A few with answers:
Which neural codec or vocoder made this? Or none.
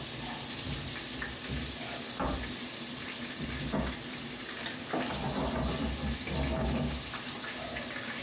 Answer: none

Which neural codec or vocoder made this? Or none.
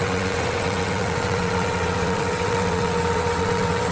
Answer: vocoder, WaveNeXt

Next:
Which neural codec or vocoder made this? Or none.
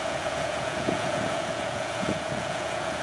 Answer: vocoder, Vocos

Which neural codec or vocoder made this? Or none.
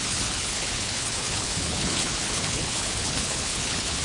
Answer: codec, HILCodec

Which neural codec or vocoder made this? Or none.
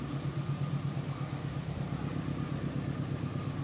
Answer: none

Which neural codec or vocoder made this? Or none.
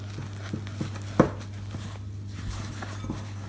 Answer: none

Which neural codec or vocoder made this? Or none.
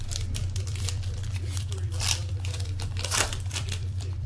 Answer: vocoder, BigVGAN v2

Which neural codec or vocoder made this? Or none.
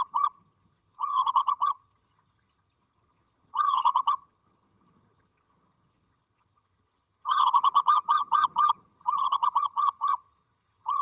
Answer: vocoder, HiFi-GAN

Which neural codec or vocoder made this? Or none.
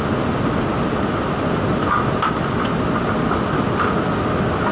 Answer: none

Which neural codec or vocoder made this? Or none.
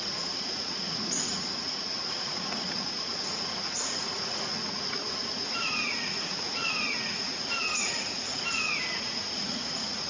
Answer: vocoder, Vocos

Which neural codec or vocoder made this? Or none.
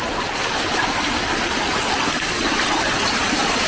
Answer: none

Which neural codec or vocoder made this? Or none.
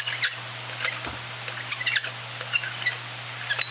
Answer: none